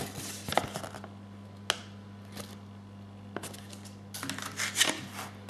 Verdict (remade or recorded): recorded